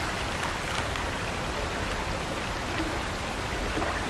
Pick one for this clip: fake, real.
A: real